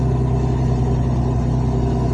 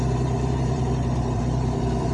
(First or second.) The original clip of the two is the first